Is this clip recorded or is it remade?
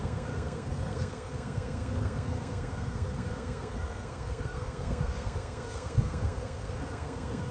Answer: remade